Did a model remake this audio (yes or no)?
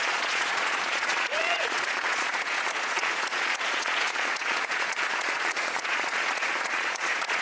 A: yes